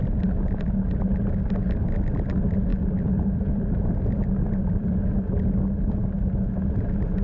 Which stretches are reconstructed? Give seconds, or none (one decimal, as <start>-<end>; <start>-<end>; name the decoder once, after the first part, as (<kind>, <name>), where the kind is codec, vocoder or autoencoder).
2.7-5.0 (vocoder, BigVGAN v2); 6.0-6.6